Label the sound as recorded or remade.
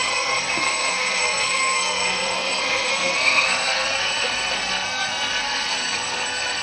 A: remade